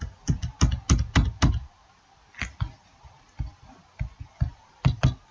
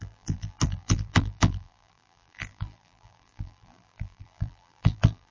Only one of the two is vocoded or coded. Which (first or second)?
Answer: second